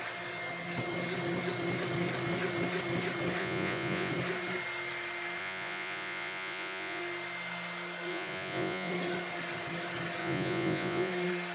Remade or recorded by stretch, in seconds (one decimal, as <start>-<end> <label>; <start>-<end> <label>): 0.0-3.4 recorded; 3.4-4.1 remade; 4.1-5.4 recorded; 5.4-7.0 remade; 7.0-8.1 recorded; 8.1-8.9 remade; 8.9-10.2 recorded; 10.2-11.1 remade; 11.1-11.5 recorded